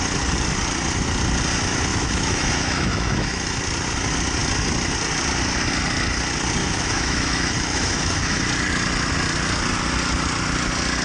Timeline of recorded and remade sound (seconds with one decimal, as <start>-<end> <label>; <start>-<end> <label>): 0.0-1.9 recorded; 1.9-3.6 remade; 3.6-6.6 recorded; 6.6-8.4 remade; 8.4-11.0 recorded